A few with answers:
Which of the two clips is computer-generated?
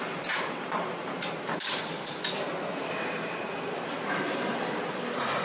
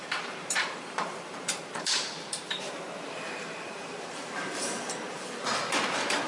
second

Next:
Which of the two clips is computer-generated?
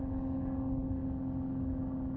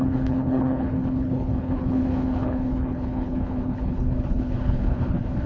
second